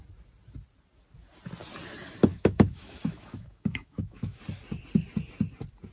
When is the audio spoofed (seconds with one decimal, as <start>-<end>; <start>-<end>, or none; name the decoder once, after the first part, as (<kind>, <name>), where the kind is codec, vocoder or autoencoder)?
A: 2.3-4.4 (autoencoder, DAC-VAE)